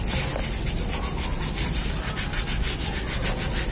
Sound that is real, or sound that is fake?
real